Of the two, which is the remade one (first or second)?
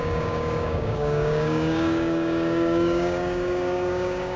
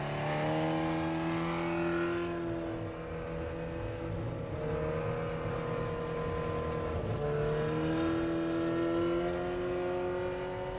first